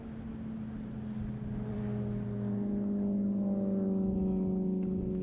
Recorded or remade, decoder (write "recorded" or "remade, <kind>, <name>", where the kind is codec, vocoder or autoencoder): recorded